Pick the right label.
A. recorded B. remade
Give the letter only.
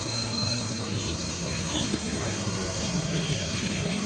B